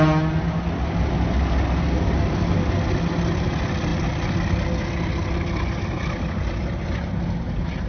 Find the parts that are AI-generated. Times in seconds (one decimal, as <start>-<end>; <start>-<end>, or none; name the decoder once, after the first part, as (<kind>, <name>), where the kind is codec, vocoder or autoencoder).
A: none